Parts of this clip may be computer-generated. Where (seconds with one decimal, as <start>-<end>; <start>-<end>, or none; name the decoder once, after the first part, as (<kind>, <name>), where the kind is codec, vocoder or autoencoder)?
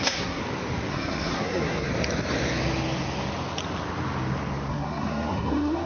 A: 0.0-0.4 (codec, SNAC); 0.9-1.9; 4.7-5.9